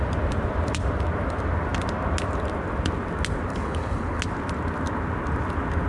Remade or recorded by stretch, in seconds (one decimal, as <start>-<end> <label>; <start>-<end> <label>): 0.0-3.5 recorded; 3.5-4.2 remade; 4.2-5.9 recorded